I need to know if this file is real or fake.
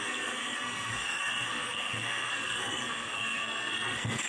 fake